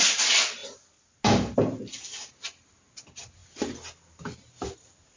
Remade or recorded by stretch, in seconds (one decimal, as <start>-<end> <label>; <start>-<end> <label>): 0.0-5.2 recorded